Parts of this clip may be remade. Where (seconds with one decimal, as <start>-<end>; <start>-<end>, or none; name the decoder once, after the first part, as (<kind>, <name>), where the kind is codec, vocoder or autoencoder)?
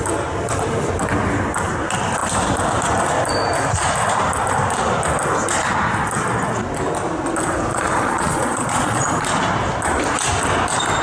7.7-9.1 (vocoder, Vocos)